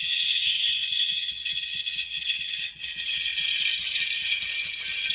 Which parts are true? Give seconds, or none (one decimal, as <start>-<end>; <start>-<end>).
3.3-5.1